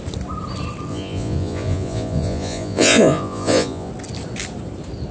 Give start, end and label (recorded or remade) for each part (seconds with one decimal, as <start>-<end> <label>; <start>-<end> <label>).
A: 0.0-0.9 recorded; 0.9-3.9 remade; 3.9-5.1 recorded